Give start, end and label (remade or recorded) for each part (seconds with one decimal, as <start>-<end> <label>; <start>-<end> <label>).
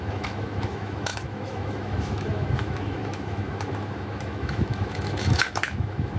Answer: 0.0-6.2 remade